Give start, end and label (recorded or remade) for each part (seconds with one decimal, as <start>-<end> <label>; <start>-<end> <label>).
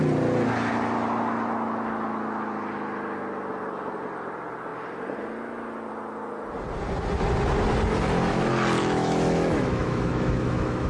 0.0-8.8 recorded; 8.8-10.9 remade